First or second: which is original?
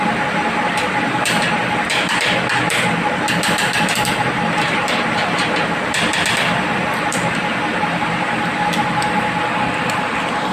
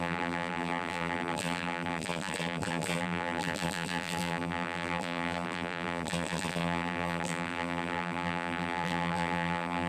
first